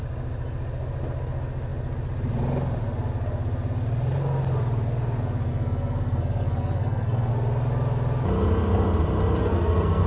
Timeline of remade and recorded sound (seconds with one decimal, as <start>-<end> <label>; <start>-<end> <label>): 0.0-5.5 recorded; 5.5-7.3 remade; 7.3-9.4 recorded; 9.4-10.1 remade